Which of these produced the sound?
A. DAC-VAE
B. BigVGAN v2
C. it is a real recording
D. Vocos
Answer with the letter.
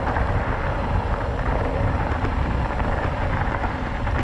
C